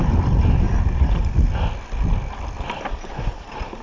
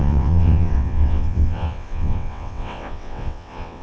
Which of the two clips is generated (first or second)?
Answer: second